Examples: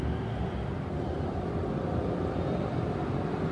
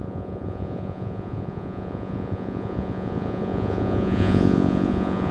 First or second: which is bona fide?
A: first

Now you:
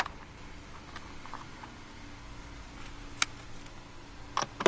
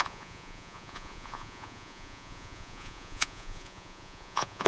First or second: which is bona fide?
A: first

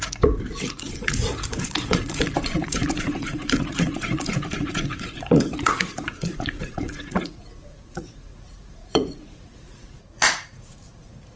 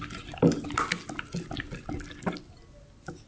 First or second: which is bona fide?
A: second